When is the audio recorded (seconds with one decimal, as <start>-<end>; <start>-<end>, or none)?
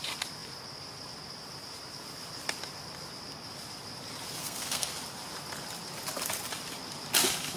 0.0-4.4; 4.9-7.6